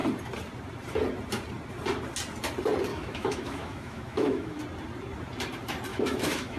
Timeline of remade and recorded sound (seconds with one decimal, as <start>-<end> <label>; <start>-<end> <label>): 0.0-2.9 recorded; 2.9-4.6 remade; 4.6-5.9 recorded; 5.9-6.6 remade